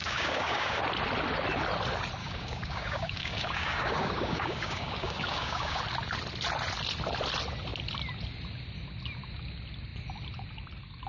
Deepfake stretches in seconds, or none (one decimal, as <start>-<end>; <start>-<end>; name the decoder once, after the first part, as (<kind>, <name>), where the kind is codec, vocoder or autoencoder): 0.0-0.8 (codec, DAC); 2.2-5.8